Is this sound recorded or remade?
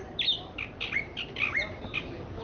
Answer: recorded